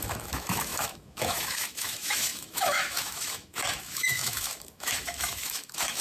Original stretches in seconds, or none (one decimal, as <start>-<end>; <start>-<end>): none